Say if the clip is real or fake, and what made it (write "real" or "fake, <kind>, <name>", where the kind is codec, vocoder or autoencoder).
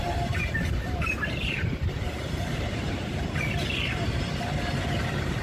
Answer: fake, vocoder, BigVGAN v2